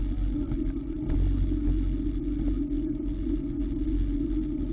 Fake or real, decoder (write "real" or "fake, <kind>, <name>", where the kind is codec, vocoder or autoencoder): real